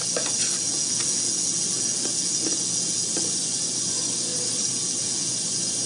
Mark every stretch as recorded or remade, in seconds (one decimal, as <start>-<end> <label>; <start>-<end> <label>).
0.0-3.3 recorded; 3.3-4.3 remade; 4.3-5.2 recorded; 5.2-5.9 remade